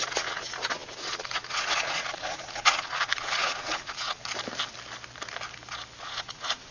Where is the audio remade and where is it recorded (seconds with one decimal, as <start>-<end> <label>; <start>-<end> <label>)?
0.0-4.2 remade; 4.2-6.0 recorded; 6.0-6.7 remade